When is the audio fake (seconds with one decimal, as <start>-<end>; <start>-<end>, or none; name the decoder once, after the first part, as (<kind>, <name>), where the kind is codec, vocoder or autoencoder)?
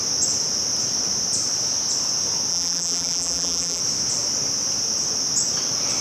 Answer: 2.5-3.8 (vocoder, BigVGAN v2)